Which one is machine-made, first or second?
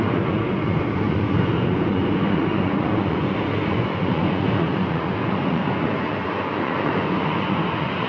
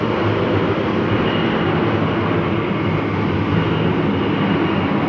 first